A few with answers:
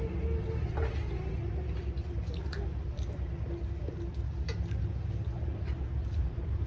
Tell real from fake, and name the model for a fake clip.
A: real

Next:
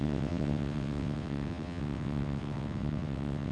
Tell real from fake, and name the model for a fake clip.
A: fake, vocoder, WaveNeXt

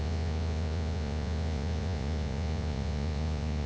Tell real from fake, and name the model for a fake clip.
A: fake, vocoder, Vocos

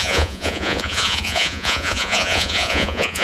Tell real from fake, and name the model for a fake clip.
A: fake, vocoder, Vocos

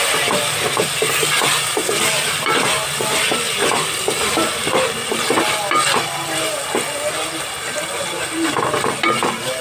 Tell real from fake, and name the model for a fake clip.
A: real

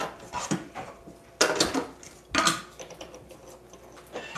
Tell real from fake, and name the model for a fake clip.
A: real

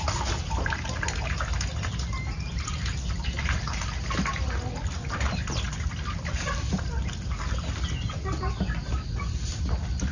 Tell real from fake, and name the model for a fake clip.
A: real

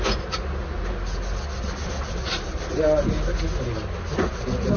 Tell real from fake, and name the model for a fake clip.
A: real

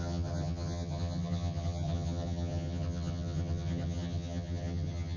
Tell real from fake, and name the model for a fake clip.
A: fake, vocoder, HiFi-GAN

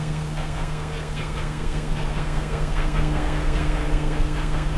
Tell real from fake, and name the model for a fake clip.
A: fake, codec, SNAC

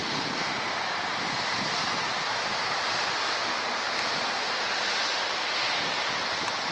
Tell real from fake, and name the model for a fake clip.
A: real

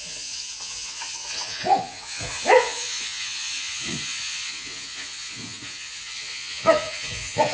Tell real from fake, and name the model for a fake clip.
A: fake, vocoder, Vocos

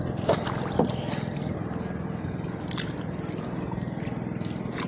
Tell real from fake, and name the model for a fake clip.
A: real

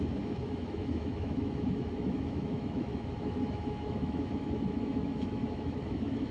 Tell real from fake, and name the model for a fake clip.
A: fake, autoencoder, DAC-VAE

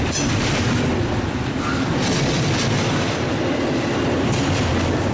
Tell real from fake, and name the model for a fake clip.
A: real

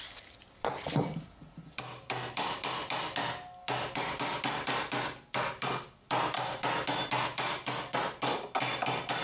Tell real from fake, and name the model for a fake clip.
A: real